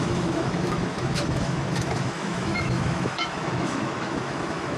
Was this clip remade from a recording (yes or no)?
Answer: yes